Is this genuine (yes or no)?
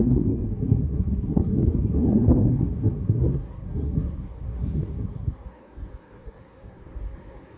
no